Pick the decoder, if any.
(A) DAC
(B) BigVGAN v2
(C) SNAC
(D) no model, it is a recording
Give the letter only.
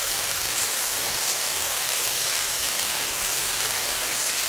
A